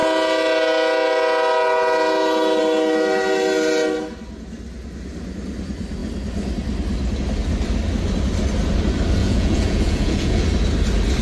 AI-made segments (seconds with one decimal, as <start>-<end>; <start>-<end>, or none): 9.2-10.4